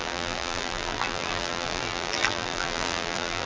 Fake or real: fake